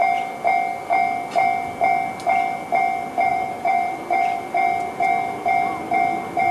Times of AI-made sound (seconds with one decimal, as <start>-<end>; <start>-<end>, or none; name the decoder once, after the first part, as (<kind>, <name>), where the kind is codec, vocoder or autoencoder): 3.3-4.4 (vocoder, BigVGAN v2)